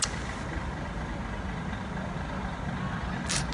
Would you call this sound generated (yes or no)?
no